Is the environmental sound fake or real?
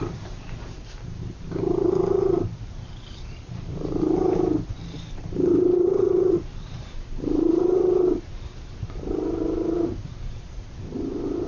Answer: fake